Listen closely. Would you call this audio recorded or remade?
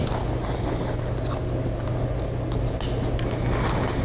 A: recorded